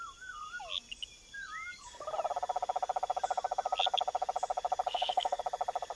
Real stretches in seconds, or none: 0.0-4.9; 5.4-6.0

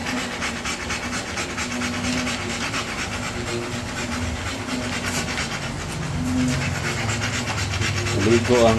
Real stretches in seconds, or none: 0.0-8.8